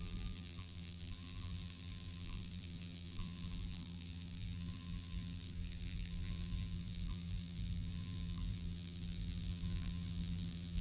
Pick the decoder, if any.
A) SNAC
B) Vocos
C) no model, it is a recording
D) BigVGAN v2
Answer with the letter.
D